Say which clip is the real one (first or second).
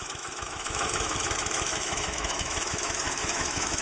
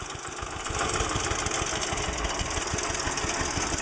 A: second